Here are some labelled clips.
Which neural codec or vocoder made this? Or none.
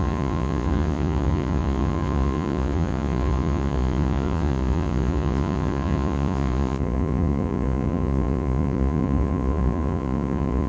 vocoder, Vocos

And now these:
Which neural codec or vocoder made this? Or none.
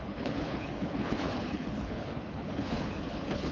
codec, HILCodec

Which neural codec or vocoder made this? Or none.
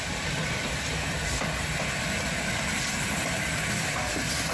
none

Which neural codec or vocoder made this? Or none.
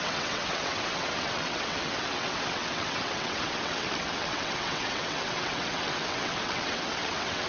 vocoder, WaveNeXt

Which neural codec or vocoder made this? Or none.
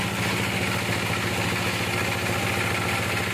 none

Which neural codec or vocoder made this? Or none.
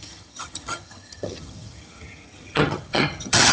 vocoder, HiFi-GAN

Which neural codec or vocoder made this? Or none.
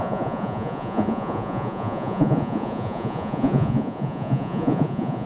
vocoder, Vocos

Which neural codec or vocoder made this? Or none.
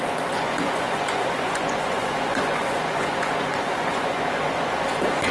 vocoder, Vocos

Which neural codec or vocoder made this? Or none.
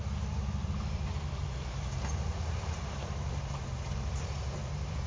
vocoder, BigVGAN v2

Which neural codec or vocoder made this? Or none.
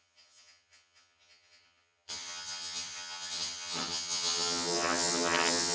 vocoder, HiFi-GAN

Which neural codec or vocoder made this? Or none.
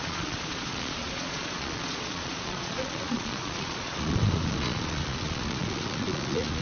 vocoder, Vocos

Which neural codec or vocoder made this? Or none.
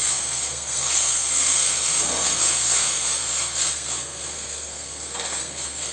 codec, SNAC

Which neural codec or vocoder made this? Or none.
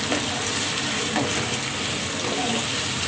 none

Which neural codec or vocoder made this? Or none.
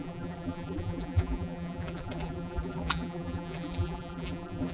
vocoder, BigVGAN v2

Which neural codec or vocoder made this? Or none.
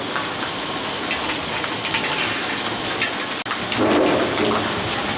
none